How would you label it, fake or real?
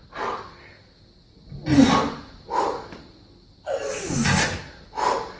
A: real